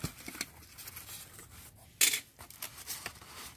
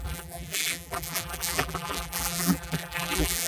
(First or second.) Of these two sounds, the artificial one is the second